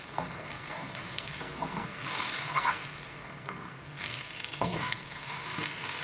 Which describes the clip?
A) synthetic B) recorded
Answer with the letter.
A